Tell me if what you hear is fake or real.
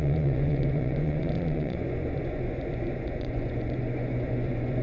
fake